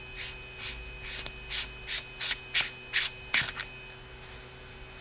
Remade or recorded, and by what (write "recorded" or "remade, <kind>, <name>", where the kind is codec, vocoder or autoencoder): recorded